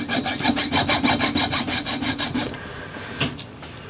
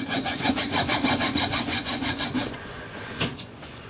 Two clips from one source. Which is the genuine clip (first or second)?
first